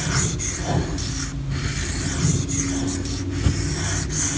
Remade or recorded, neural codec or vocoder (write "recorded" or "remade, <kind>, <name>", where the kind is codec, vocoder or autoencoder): recorded